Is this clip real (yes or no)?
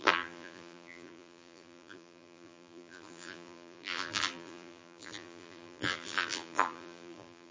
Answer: no